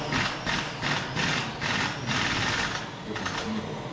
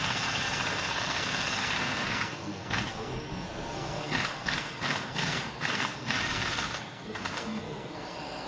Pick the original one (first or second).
first